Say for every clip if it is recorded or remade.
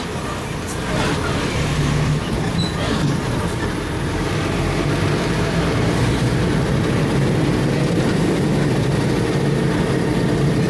recorded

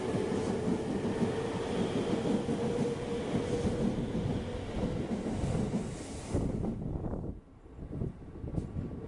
recorded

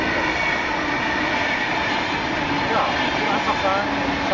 recorded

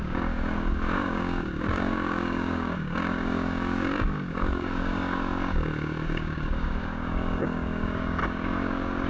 remade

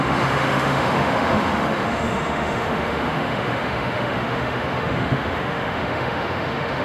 remade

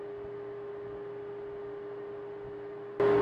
recorded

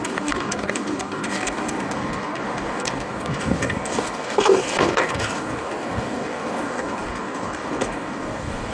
remade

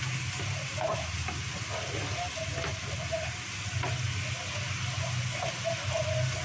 recorded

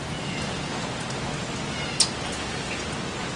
recorded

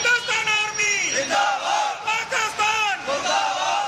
remade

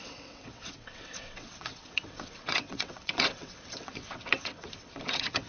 remade